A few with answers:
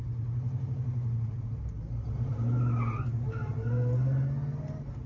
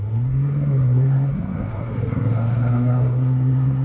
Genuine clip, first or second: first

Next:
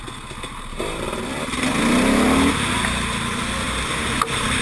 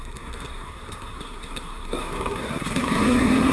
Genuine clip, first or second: first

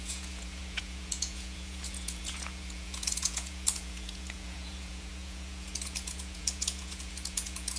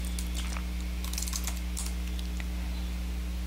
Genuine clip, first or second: second